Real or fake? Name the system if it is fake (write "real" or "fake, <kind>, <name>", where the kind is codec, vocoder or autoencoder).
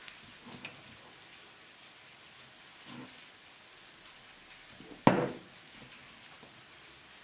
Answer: real